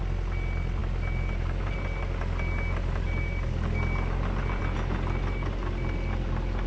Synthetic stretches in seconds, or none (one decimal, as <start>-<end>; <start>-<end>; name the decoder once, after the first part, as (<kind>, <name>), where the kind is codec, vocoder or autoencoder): none